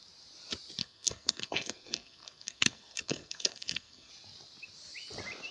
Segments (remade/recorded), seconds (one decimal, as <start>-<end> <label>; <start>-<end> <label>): 0.0-0.8 recorded; 0.8-4.1 remade; 4.1-5.5 recorded